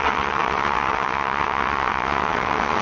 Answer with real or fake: fake